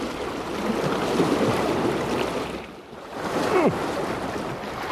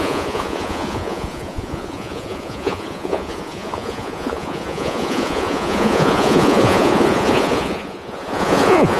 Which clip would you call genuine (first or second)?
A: first